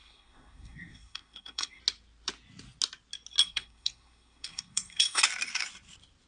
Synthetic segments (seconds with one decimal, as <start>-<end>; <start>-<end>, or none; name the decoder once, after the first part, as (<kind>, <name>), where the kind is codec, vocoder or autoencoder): 0.0-1.8 (codec, SNAC); 3.4-5.2